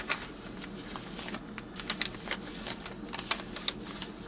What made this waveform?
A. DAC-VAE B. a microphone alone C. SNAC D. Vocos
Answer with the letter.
B